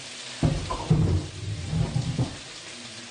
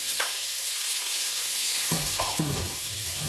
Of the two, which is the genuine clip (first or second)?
first